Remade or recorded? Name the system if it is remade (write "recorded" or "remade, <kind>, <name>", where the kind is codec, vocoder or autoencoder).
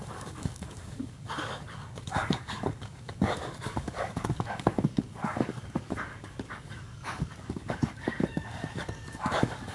remade, codec, DAC